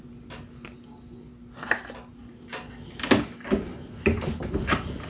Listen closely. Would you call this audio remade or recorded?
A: recorded